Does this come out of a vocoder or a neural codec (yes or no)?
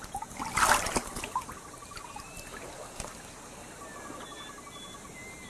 no